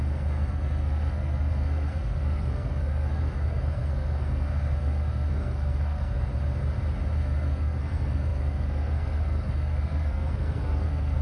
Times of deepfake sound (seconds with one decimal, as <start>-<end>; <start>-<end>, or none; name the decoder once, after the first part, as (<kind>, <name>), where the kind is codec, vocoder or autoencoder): 0.0-6.3 (codec, SNAC); 7.2-11.2